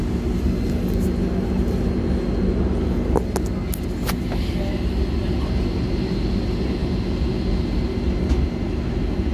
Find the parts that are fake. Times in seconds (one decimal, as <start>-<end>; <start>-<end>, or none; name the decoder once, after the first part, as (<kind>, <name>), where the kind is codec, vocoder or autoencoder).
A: none